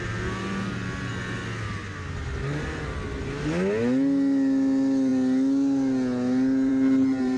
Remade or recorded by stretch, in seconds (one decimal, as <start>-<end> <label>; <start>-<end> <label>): 0.0-7.4 recorded